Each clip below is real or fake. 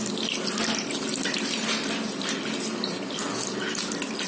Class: real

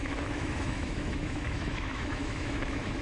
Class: fake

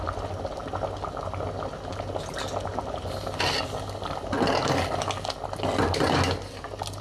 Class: real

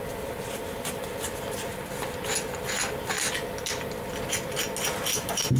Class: real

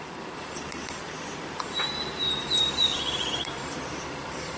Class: fake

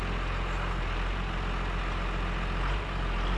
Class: real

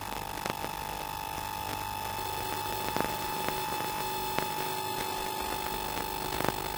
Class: real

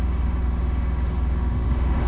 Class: fake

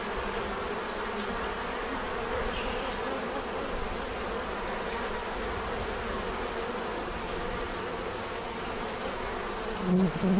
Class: real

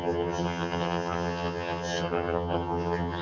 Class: fake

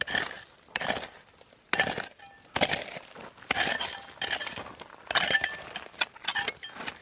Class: real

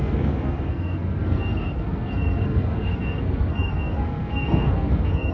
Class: fake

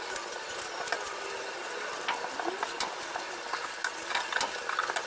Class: real